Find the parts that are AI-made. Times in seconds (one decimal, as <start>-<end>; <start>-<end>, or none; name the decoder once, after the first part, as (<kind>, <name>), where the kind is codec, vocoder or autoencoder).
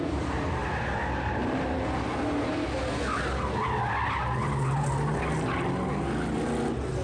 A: none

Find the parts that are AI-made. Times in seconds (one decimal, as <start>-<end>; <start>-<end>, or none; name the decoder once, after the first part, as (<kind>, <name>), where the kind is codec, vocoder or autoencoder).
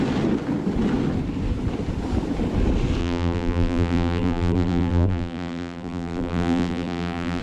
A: 3.0-7.4 (vocoder, BigVGAN v2)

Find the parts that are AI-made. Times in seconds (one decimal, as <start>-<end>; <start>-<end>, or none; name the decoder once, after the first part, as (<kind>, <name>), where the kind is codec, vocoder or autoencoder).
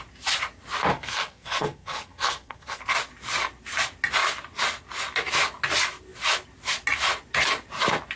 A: 0.9-2.8 (codec, SNAC)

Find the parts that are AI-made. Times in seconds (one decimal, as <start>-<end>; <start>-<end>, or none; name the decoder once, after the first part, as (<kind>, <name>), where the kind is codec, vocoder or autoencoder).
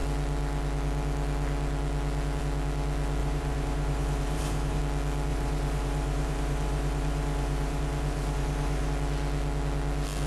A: 3.2-4.8 (vocoder, BigVGAN v2); 5.3-8.9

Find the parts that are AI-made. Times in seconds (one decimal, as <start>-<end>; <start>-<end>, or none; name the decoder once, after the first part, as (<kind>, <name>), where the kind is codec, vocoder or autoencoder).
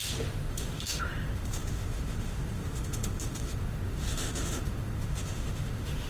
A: 0.0-6.1 (autoencoder, DAC-VAE)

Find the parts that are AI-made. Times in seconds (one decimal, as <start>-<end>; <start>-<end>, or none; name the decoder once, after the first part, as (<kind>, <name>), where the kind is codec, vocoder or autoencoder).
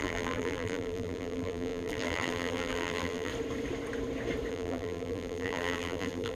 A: 0.0-3.3 (vocoder, BigVGAN v2); 4.5-6.3